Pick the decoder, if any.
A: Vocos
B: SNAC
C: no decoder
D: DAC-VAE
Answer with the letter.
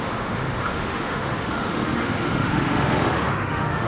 D